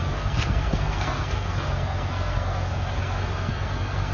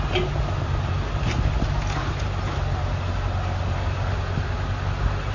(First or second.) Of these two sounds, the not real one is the first